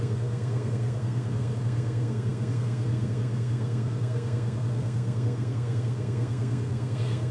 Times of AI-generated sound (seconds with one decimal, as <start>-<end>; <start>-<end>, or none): 0.0-7.3

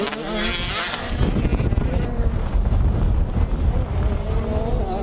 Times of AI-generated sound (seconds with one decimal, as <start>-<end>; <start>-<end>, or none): none